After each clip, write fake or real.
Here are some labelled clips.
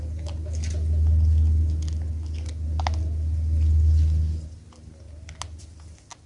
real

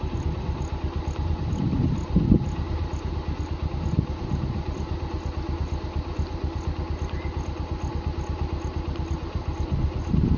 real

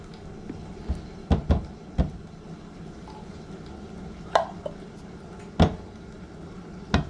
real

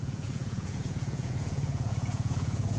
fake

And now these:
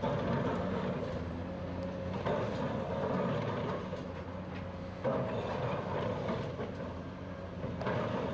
real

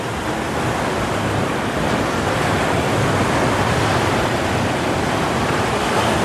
real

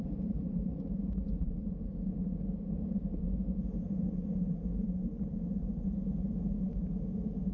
fake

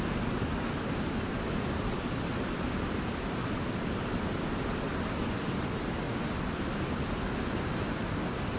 real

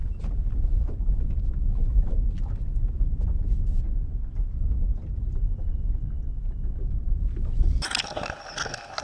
real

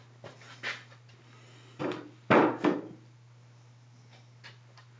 real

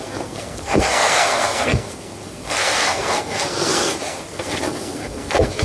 fake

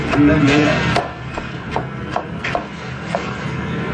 fake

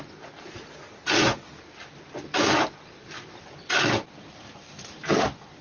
real